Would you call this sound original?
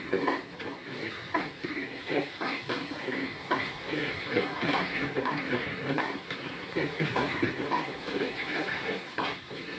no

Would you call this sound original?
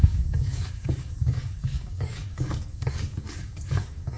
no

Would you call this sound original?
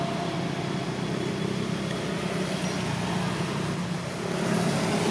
yes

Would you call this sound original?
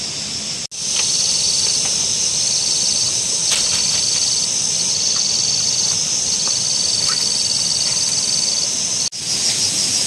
yes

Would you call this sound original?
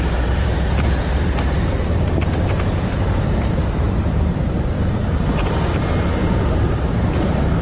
no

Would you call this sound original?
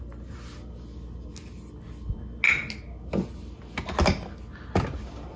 yes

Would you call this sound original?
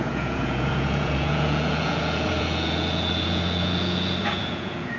no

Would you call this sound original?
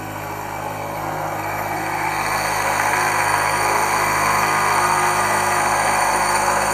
no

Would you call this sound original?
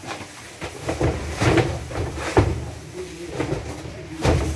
no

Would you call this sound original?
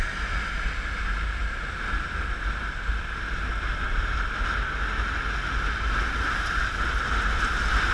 yes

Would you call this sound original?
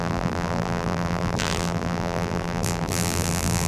no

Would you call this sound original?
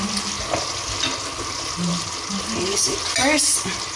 yes